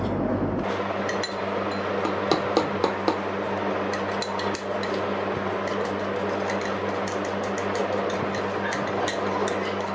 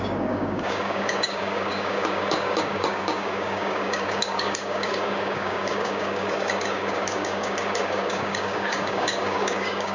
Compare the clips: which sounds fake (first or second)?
second